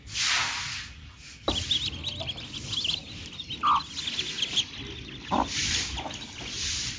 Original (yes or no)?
yes